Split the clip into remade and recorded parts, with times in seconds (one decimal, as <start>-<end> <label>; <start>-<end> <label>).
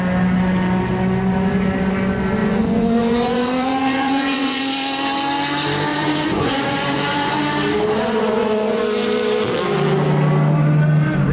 0.0-2.4 recorded; 2.4-4.6 remade; 4.6-5.9 recorded; 5.9-7.4 remade; 7.4-8.2 recorded; 8.2-8.8 remade; 8.8-11.3 recorded